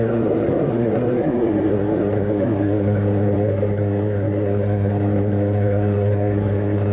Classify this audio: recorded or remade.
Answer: remade